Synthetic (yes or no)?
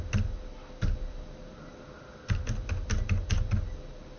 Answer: no